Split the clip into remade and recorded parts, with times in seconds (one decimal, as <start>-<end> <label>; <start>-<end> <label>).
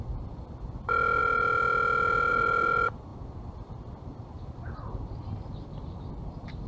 0.0-1.2 remade; 1.2-2.3 recorded; 2.3-3.1 remade; 3.1-5.8 recorded; 5.8-6.7 remade